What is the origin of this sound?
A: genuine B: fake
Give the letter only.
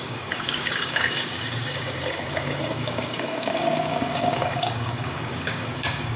B